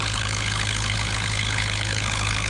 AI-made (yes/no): yes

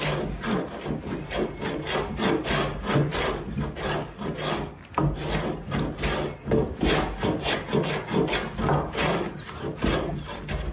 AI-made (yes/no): no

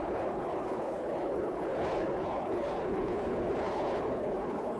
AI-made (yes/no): yes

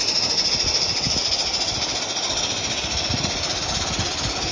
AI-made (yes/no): no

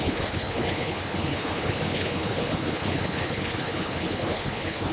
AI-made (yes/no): yes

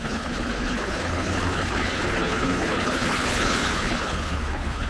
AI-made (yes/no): yes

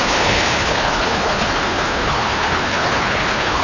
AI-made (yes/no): yes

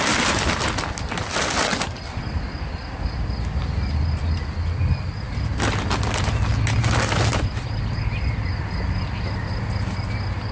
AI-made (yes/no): no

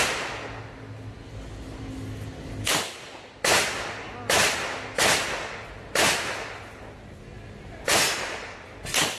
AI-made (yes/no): no